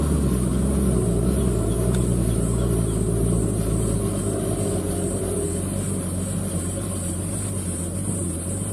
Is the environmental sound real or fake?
real